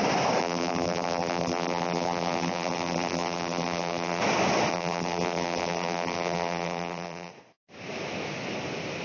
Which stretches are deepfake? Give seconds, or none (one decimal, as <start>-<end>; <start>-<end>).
0.4-4.2; 4.7-7.3